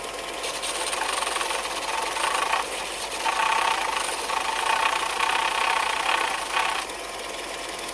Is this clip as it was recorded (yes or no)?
yes